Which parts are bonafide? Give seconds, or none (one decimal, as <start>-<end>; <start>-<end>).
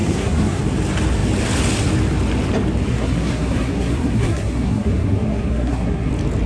0.6-2.9; 6.1-6.5